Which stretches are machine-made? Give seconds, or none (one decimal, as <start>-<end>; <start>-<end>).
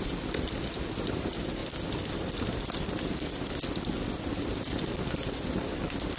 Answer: none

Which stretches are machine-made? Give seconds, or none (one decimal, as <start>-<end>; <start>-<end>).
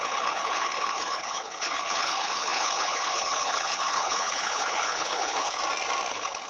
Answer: 0.0-5.6; 6.1-6.5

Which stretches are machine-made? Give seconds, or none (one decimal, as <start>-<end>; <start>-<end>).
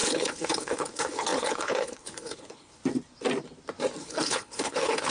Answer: 0.0-2.8; 4.0-5.1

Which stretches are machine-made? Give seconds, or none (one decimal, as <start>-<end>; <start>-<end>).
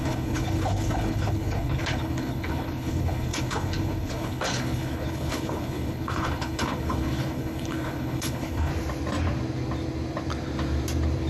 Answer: 0.0-8.7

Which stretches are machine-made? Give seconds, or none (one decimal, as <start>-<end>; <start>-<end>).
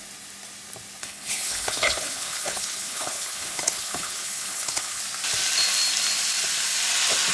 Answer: 1.0-5.0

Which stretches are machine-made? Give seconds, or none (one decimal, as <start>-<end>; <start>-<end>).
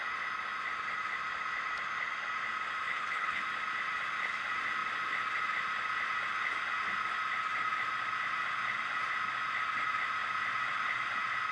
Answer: 2.9-3.4